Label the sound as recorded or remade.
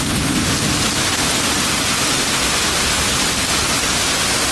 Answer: recorded